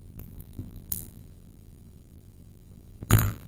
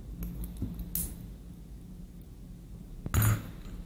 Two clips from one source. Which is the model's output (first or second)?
first